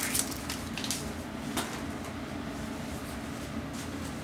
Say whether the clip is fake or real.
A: real